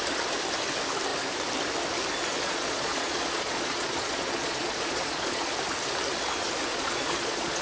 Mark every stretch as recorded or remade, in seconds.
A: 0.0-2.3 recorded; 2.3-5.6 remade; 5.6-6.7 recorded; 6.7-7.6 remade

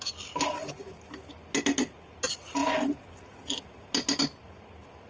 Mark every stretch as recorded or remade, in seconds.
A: 0.0-5.1 recorded

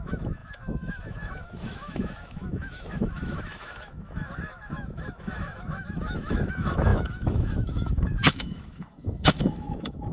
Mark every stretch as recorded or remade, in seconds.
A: 0.0-10.1 remade

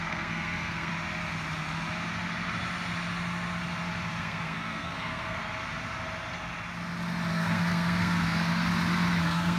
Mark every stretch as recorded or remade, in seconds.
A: 0.0-0.9 remade; 0.9-4.2 recorded; 4.2-5.4 remade; 5.4-7.3 recorded; 7.3-8.7 remade; 8.7-9.2 recorded; 9.2-9.6 remade

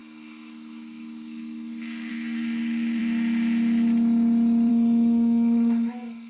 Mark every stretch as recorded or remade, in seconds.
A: 0.0-3.0 remade; 3.0-4.7 recorded; 4.7-6.3 remade

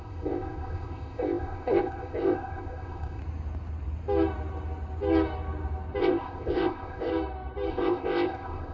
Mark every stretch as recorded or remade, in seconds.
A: 0.0-3.2 remade; 3.2-6.0 recorded; 6.0-7.1 remade; 7.1-7.7 recorded; 7.7-8.7 remade

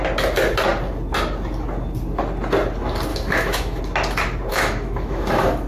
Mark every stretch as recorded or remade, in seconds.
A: 0.0-3.1 recorded; 3.1-3.8 remade; 3.8-4.5 recorded; 4.5-5.7 remade

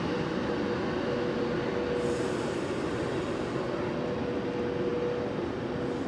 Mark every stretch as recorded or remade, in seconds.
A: 0.0-6.1 recorded